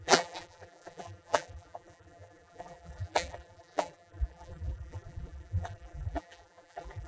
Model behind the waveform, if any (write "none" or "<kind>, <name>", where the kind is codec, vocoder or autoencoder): vocoder, BigVGAN v2